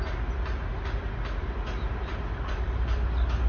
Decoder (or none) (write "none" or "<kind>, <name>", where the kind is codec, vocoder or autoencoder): none